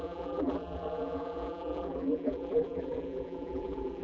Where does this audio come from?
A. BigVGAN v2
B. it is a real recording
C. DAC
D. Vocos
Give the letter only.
A